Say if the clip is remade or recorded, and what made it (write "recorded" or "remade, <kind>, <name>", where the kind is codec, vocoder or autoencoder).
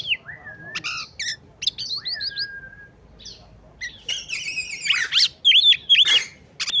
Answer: recorded